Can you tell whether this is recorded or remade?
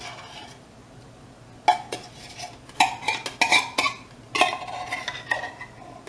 recorded